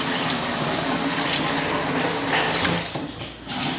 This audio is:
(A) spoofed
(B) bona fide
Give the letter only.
B